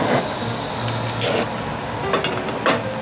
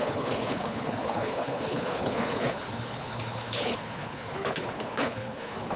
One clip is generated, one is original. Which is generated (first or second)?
second